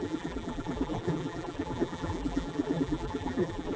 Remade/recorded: remade